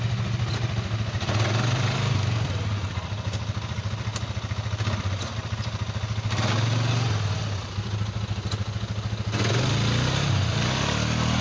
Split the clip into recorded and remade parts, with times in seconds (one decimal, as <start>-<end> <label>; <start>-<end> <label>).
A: 0.0-11.4 recorded